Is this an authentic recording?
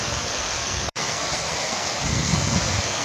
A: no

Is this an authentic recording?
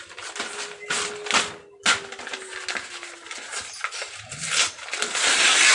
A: yes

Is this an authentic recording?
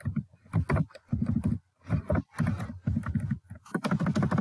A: yes